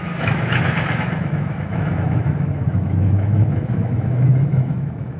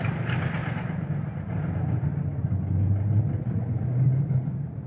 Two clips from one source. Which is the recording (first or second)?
second